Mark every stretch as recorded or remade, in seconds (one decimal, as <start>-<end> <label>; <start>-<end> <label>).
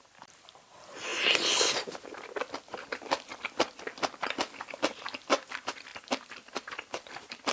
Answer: 0.0-1.1 remade; 1.1-2.8 recorded; 2.8-3.3 remade; 3.3-4.5 recorded; 4.5-7.5 remade